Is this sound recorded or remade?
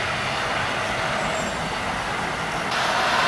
recorded